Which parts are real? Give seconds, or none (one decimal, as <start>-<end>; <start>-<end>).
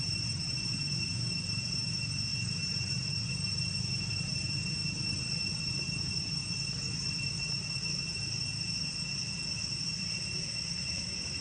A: 4.8-6.0; 6.4-8.1; 8.5-9.8